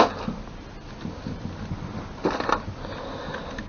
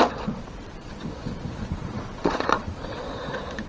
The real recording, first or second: first